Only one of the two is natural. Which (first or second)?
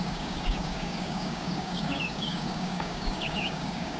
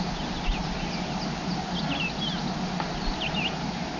second